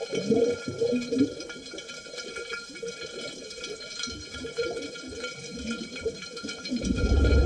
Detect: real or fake fake